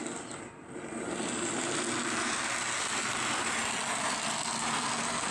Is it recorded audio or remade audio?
recorded